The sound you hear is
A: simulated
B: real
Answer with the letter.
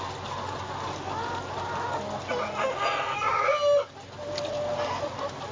B